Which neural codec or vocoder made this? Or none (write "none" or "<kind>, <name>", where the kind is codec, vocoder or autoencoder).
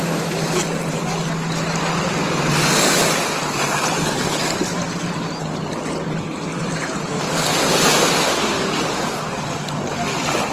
none